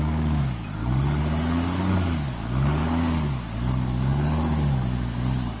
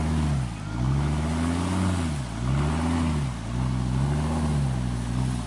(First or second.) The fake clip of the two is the first